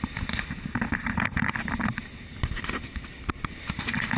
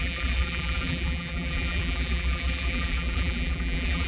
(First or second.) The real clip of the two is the first